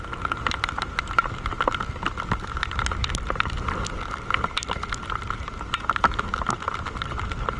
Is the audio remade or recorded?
recorded